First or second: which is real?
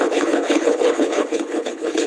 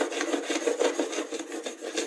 second